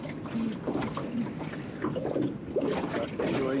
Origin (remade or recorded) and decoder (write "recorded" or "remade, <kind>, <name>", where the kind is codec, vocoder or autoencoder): recorded